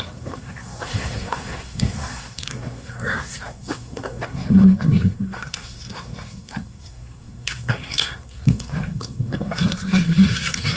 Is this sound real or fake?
fake